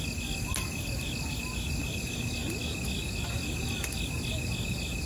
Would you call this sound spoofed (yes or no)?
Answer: no